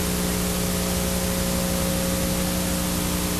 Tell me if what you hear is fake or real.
real